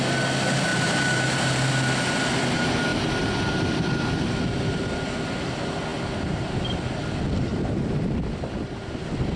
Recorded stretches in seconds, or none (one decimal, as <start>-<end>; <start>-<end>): 0.0-0.7; 1.7-2.9; 5.1-7.5; 8.1-9.4